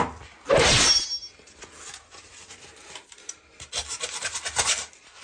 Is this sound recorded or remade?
recorded